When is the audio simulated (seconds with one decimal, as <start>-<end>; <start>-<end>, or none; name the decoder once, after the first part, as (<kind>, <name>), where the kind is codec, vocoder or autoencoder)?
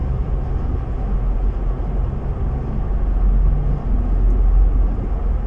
none